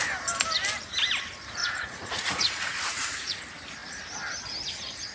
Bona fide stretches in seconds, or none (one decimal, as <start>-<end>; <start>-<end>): 0.0-1.6; 3.4-5.1